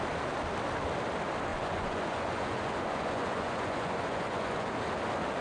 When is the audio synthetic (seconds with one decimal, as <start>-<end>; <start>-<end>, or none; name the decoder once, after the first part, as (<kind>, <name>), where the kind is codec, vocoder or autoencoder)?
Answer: 1.5-4.7 (vocoder, Vocos)